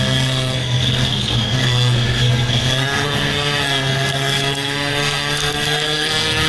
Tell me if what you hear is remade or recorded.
remade